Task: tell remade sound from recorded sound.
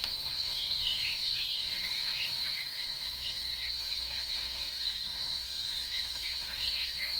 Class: remade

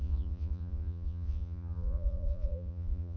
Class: remade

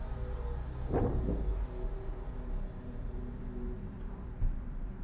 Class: recorded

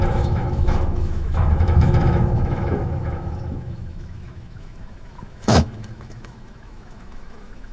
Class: remade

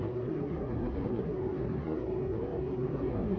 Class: remade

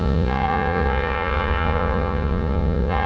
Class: remade